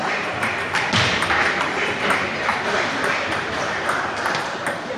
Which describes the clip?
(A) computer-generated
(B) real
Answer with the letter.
A